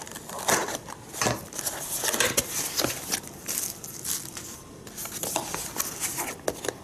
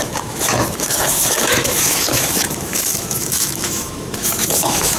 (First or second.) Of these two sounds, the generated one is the second